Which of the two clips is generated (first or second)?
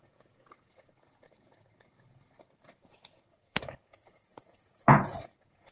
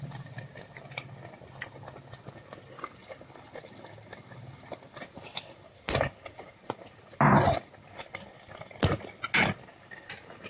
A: first